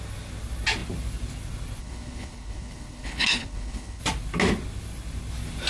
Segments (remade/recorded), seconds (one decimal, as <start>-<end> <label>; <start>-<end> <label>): 0.0-1.8 recorded; 1.8-4.0 remade; 4.0-5.7 recorded